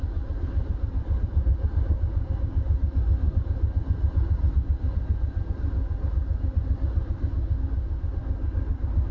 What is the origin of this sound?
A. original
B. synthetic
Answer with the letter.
A